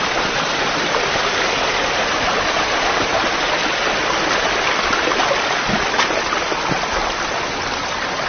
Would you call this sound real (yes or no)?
yes